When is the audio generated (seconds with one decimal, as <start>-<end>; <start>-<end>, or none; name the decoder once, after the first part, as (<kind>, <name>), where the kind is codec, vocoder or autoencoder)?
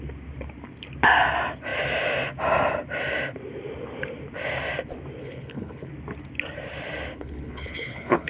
5.2-5.9 (codec, HILCodec); 7.1-8.3